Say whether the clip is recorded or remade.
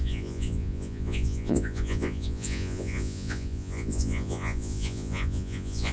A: remade